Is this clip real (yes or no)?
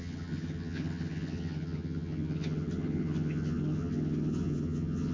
no